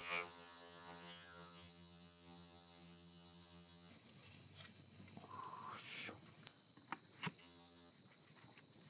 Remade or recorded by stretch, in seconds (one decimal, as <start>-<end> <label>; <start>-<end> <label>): 0.0-3.9 remade; 3.9-7.4 recorded; 7.4-7.9 remade; 7.9-8.9 recorded